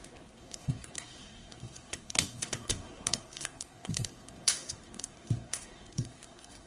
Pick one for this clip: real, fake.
fake